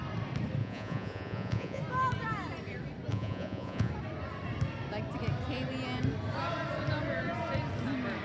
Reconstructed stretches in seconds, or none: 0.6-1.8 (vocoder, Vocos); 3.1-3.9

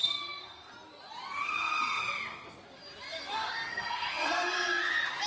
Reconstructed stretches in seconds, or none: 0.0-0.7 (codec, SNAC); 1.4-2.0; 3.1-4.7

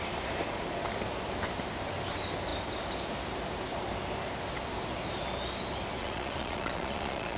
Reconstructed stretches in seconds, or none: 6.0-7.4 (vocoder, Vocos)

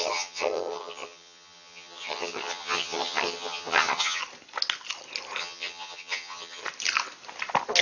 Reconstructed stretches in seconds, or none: 0.0-4.2 (vocoder, HiFi-GAN); 5.4-6.6

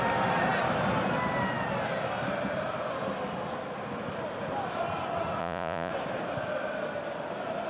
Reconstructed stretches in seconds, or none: 5.4-5.9 (vocoder, Vocos)

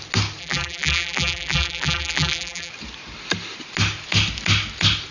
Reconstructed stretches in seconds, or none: 0.4-2.7 (vocoder, BigVGAN v2)